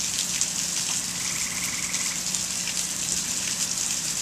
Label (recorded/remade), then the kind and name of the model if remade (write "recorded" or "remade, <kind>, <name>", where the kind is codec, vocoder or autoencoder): recorded